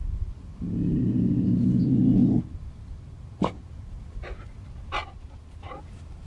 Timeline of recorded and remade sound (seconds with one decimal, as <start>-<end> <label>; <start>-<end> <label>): 0.0-6.3 recorded